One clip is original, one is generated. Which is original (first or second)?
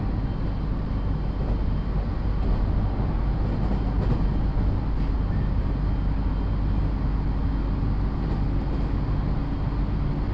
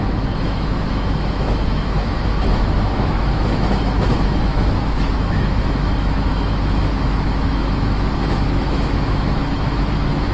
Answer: first